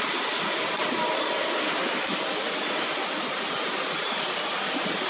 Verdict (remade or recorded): recorded